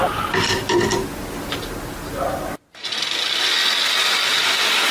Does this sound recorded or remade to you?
recorded